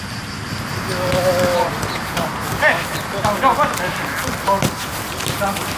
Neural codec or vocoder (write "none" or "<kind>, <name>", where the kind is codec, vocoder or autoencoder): none